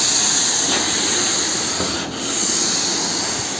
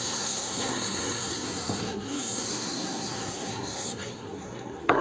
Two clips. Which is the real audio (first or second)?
first